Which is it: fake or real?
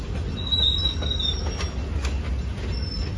real